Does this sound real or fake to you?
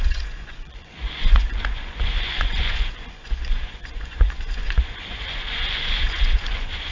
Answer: fake